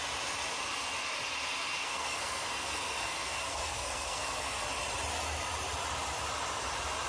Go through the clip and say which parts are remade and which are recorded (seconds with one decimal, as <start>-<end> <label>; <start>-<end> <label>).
0.0-1.8 recorded; 1.8-4.6 remade; 4.6-7.1 recorded